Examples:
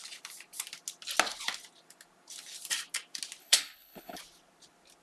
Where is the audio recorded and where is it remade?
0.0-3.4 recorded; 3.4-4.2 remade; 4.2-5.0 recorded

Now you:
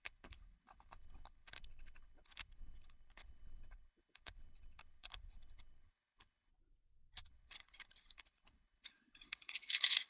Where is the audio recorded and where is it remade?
0.0-6.5 remade; 6.5-7.3 recorded; 7.3-10.1 remade

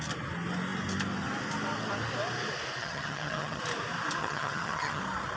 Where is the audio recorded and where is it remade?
0.0-2.8 recorded; 2.8-3.6 remade; 3.6-4.2 recorded; 4.2-5.0 remade; 5.0-5.4 recorded

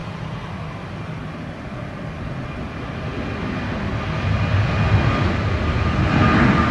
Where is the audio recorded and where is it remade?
0.0-6.7 recorded

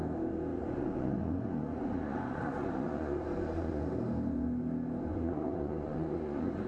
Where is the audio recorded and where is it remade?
0.0-0.5 recorded; 0.5-3.8 remade; 3.8-5.1 recorded; 5.1-6.7 remade

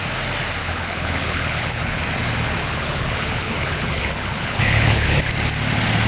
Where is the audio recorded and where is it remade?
0.0-0.6 recorded; 0.6-2.0 remade; 2.0-2.6 recorded; 2.6-5.3 remade; 5.3-6.1 recorded